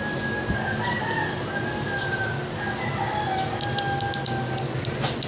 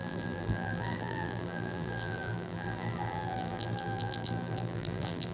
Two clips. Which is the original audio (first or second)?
first